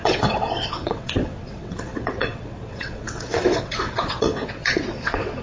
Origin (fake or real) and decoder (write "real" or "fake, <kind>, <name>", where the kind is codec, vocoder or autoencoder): fake, vocoder, WaveNeXt